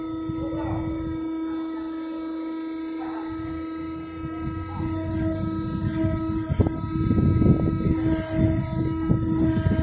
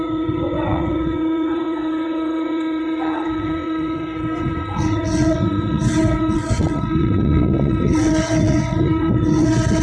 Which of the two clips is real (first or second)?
first